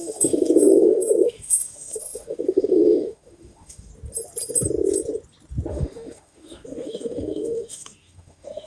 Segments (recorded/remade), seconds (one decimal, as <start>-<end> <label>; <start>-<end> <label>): 0.0-3.9 remade; 3.9-5.7 recorded; 5.7-8.7 remade